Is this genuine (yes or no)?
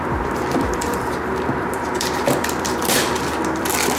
no